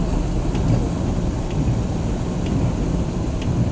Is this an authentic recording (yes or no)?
no